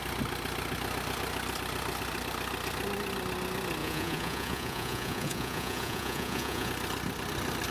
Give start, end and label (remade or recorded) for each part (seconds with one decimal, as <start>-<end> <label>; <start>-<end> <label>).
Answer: 0.0-3.8 recorded; 3.8-6.7 remade; 6.7-7.7 recorded